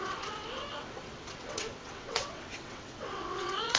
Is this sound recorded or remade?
remade